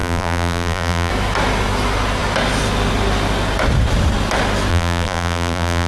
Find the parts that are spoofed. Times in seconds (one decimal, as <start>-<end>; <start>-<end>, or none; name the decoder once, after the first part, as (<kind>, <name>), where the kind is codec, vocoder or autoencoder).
0.0-1.1 (vocoder, BigVGAN v2); 4.7-5.9